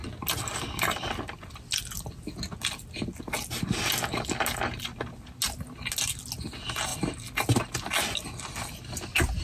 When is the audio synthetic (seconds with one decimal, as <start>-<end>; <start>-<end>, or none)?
none